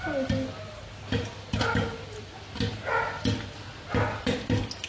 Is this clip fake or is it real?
real